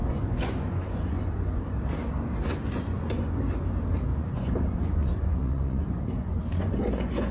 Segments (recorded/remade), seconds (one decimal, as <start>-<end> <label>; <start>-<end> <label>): 0.0-1.6 remade; 1.6-2.5 recorded; 2.5-3.4 remade; 3.4-4.1 recorded; 4.1-7.3 remade